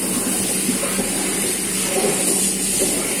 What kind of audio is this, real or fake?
real